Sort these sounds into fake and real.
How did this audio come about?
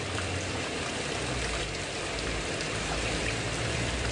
fake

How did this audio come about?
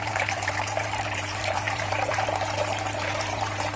fake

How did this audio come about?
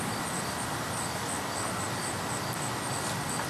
real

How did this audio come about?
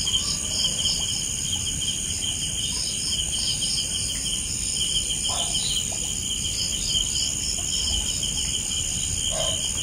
real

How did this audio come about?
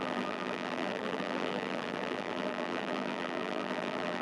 fake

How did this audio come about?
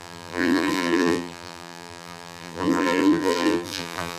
fake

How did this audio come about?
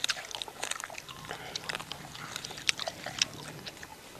fake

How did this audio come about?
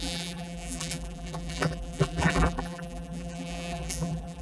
fake